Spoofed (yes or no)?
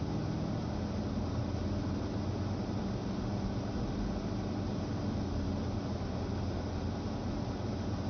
no